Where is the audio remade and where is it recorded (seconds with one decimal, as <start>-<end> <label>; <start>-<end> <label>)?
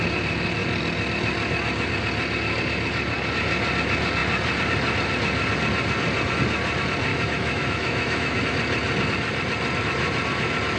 0.0-7.1 recorded; 7.1-8.4 remade; 8.4-10.8 recorded